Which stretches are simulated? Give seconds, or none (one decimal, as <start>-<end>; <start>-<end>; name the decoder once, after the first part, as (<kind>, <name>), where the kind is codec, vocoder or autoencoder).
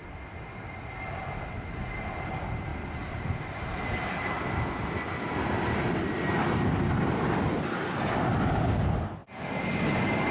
none